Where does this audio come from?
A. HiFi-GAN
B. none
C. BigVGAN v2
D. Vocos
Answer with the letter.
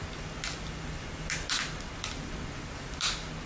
B